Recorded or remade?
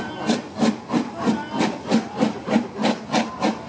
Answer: recorded